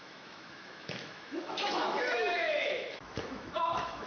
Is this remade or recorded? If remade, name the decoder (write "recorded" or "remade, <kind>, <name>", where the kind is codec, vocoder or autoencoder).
remade, autoencoder, DAC-VAE